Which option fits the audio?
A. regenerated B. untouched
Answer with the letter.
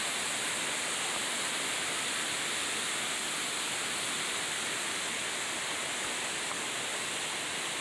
B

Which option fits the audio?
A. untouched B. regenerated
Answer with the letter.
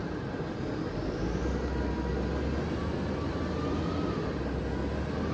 A